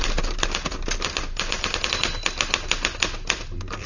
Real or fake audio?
real